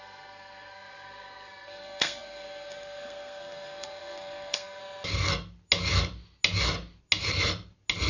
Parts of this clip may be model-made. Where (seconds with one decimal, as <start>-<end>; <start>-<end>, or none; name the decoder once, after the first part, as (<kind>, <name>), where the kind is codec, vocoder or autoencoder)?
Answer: 0.0-4.8 (codec, SNAC)